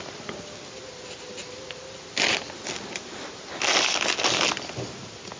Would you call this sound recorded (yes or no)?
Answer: yes